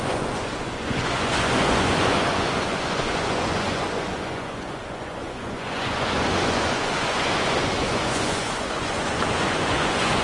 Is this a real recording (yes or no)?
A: no